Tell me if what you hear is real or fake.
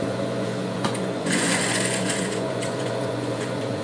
fake